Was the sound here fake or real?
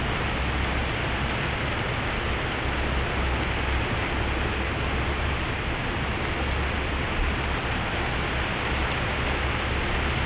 real